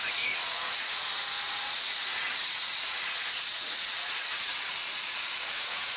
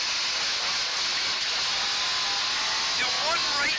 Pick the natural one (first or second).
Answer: second